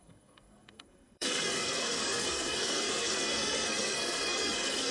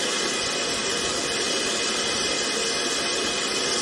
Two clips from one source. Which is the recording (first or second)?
second